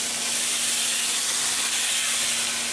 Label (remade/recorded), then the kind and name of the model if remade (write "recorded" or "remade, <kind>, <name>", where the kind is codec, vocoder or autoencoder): recorded